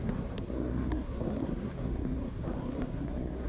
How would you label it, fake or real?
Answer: fake